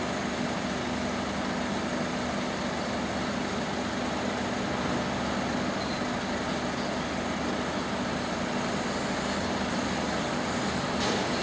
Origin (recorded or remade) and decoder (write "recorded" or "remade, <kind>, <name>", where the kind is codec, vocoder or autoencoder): recorded